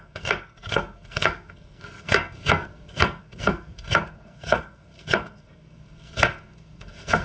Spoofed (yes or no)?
yes